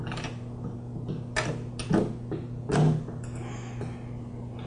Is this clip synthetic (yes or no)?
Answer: no